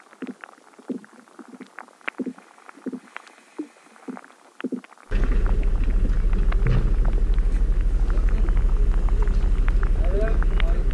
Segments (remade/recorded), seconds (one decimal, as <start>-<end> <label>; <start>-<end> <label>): 0.0-10.9 recorded